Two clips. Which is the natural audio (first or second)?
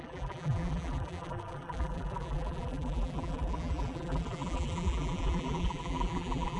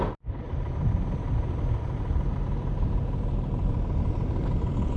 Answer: second